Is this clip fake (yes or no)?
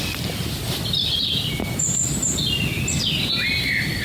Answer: no